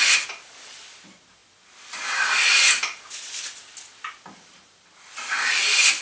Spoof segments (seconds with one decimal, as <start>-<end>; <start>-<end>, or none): none